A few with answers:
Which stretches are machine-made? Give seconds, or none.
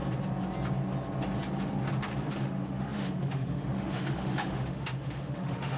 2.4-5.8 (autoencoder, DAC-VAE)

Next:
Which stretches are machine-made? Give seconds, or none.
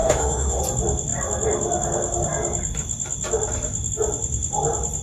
0.0-0.6 (autoencoder, DAC-VAE)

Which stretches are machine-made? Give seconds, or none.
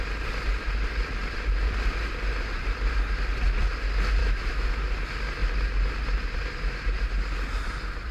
4.2-4.9 (autoencoder, DAC-VAE)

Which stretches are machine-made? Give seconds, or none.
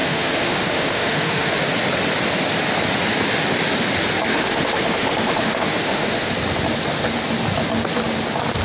0.0-1.6 (autoencoder, DAC-VAE); 4.3-6.3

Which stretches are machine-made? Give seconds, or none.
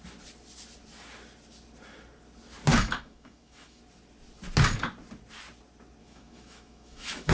2.7-3.8 (autoencoder, DAC-VAE); 6.0-7.3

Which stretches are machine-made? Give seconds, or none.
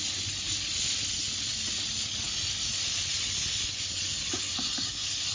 none